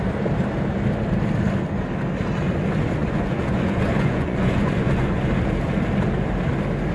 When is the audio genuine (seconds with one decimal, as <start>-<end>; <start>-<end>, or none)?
0.0-3.0; 5.3-6.9